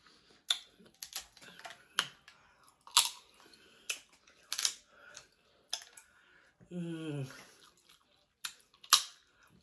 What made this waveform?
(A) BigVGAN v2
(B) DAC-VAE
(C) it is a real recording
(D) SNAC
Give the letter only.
C